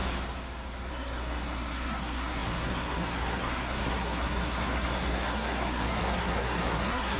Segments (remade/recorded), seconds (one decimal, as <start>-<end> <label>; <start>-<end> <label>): 0.0-0.9 recorded; 0.9-7.2 remade